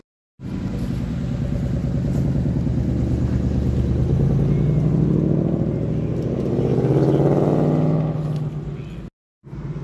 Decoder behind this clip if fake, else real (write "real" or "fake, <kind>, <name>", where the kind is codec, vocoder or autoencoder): real